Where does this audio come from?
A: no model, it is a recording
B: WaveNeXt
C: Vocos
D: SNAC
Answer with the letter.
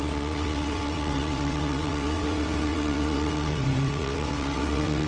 B